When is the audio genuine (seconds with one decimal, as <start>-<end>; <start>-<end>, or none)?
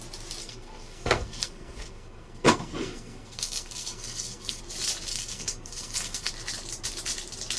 0.0-0.4; 4.6-5.1; 6.3-7.6